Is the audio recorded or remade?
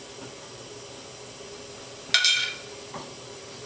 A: recorded